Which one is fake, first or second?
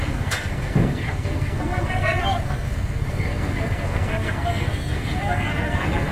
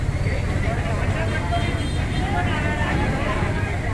first